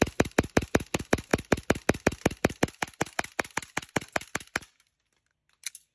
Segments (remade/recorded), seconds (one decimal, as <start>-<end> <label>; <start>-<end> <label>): 0.0-5.9 recorded